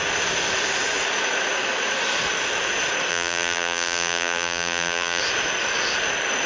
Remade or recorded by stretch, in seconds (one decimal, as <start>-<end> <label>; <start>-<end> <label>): 0.0-3.1 recorded; 3.1-5.2 remade; 5.2-6.5 recorded